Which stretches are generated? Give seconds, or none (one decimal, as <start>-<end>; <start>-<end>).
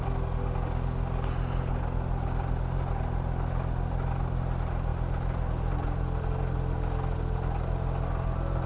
none